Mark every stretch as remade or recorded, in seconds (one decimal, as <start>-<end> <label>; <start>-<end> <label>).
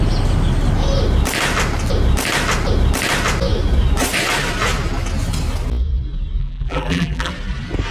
0.0-6.4 recorded; 6.4-7.3 remade; 7.3-7.9 recorded